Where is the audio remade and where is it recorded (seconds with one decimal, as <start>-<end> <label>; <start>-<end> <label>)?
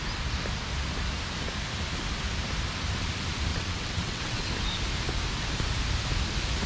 0.0-3.5 recorded; 3.5-4.5 remade; 4.5-6.7 recorded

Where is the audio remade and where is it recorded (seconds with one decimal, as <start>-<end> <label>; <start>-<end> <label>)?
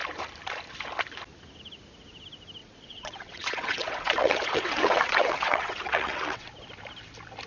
0.0-2.6 recorded; 2.6-6.5 remade; 6.5-7.5 recorded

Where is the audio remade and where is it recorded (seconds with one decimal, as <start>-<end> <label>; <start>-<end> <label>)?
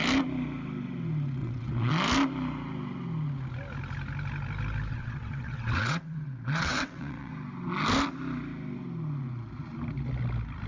0.0-1.4 recorded; 1.4-1.9 remade; 1.9-4.9 recorded; 4.9-7.3 remade; 7.3-10.7 recorded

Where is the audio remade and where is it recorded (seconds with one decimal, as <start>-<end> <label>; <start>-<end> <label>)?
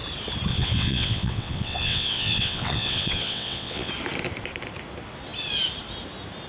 0.0-0.5 recorded; 0.5-3.9 remade; 3.9-6.5 recorded